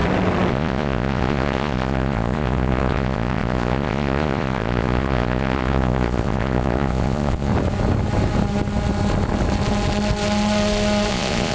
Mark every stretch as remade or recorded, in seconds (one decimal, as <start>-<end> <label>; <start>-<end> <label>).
0.0-0.5 recorded; 0.5-7.5 remade; 7.5-11.1 recorded; 11.1-11.5 remade

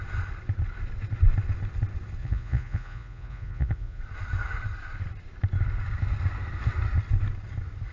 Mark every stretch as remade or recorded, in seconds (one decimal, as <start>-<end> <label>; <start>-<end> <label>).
0.0-2.2 recorded; 2.2-4.0 remade; 4.0-7.9 recorded

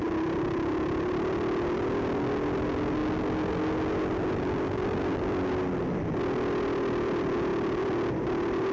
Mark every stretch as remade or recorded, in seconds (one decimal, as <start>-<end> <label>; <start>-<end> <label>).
0.0-8.7 recorded

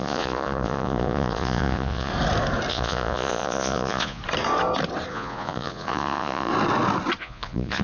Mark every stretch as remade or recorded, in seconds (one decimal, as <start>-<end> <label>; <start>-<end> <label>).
0.0-2.1 remade; 2.1-2.7 recorded; 2.7-4.2 remade; 4.2-5.1 recorded; 5.1-6.5 remade; 6.5-7.2 recorded; 7.2-7.8 remade

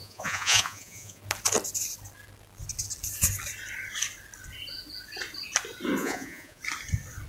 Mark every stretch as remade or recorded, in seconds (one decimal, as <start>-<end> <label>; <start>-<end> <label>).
0.0-1.2 remade; 1.2-6.0 recorded; 6.0-6.6 remade; 6.6-7.3 recorded